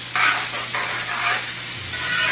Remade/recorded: recorded